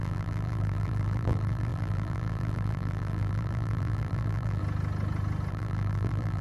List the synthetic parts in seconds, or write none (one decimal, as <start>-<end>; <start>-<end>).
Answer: 0.0-4.6; 5.5-6.4

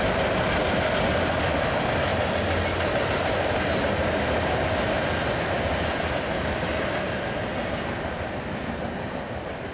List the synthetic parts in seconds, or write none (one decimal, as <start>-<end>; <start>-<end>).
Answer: none

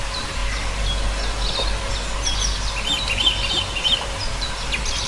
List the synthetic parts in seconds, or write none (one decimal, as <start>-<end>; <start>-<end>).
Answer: 0.0-0.4; 3.5-5.1

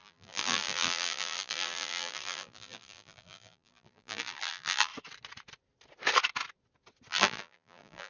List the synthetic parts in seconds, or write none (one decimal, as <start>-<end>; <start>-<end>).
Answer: 0.0-4.9; 7.1-8.1

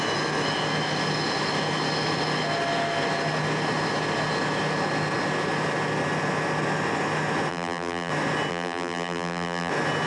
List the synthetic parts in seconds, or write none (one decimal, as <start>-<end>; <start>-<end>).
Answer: 7.5-8.1; 8.5-9.7